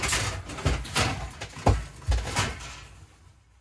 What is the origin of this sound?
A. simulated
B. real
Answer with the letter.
B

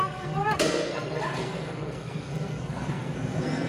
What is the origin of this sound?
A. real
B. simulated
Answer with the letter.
B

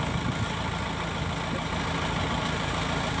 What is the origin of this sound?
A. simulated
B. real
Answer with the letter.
B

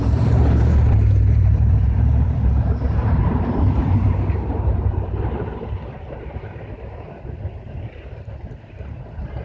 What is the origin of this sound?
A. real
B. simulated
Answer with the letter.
B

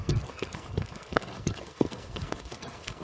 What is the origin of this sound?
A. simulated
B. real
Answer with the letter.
A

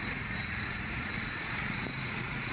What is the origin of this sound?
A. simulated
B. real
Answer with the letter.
A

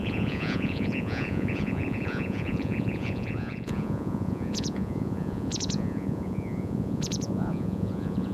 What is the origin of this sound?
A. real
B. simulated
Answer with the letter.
B